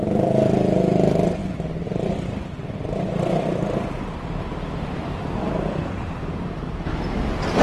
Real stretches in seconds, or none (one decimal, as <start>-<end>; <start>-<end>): 1.4-2.5